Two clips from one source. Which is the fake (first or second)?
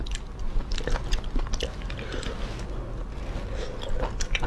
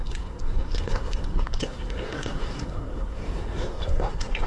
second